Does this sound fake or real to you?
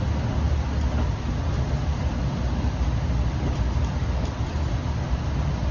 real